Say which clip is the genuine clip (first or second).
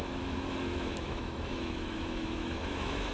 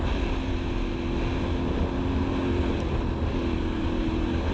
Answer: second